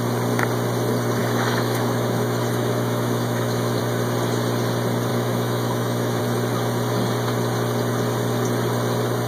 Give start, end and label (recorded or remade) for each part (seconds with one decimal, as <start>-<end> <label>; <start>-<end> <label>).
0.0-1.2 recorded; 1.2-3.8 remade; 3.8-5.1 recorded; 5.1-6.2 remade; 6.2-9.3 recorded